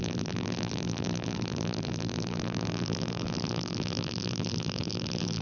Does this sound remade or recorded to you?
remade